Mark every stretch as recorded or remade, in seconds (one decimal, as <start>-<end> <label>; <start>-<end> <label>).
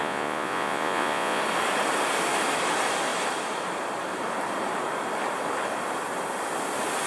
0.0-1.4 remade; 1.4-7.1 recorded